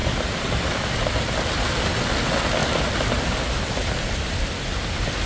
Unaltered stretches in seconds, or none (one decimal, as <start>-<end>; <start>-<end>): 1.6-2.6; 3.3-5.3